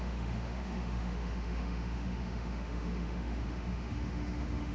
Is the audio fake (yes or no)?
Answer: yes